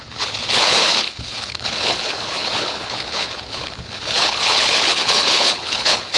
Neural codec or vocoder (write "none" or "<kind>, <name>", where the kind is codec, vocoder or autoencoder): codec, HILCodec